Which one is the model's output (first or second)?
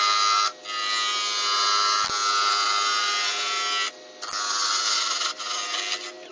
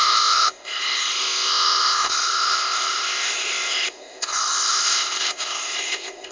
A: second